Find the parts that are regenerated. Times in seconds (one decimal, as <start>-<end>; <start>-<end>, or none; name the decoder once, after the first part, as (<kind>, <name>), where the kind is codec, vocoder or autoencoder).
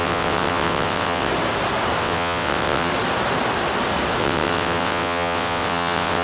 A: 0.0-1.3 (vocoder, WaveNeXt); 2.0-2.9; 4.2-6.2